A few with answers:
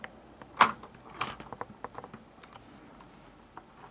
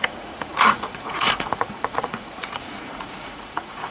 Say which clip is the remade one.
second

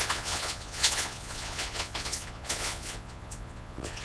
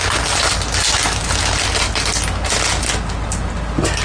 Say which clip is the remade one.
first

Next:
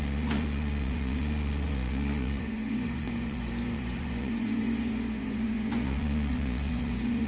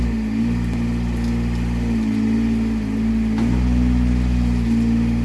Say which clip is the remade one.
first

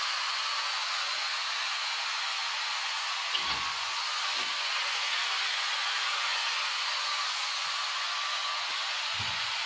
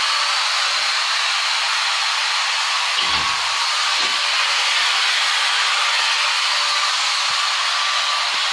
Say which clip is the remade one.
first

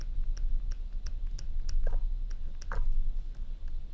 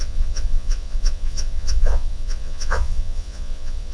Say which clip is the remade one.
second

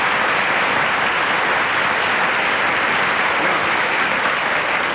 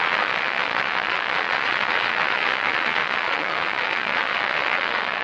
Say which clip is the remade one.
second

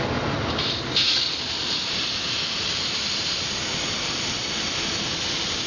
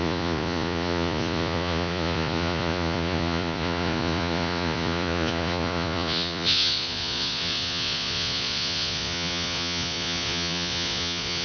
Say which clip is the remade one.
second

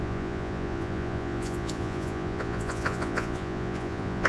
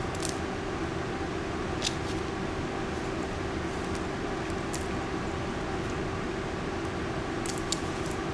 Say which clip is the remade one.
first